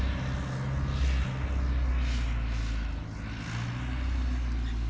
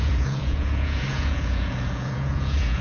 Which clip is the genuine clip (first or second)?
first